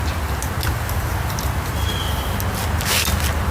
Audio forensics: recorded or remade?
recorded